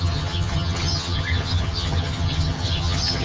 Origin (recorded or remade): remade